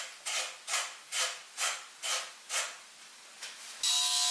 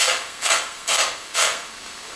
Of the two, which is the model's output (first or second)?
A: second